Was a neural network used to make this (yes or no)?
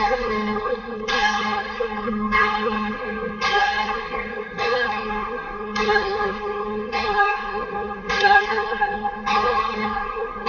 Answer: yes